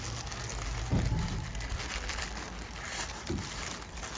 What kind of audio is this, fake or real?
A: real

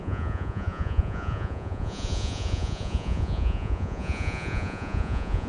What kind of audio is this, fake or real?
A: fake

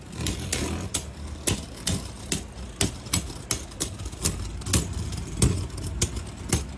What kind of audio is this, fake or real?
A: real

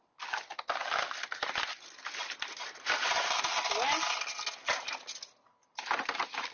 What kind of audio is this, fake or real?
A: real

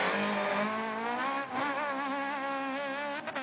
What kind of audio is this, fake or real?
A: real